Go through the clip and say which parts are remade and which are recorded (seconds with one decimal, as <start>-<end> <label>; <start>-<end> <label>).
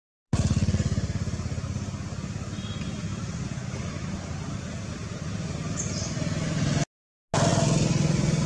0.0-8.5 recorded